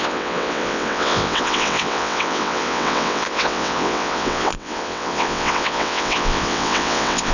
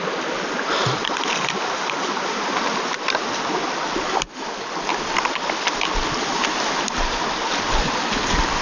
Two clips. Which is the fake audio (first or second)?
first